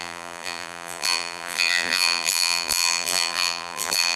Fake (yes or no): yes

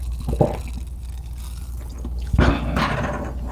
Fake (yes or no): no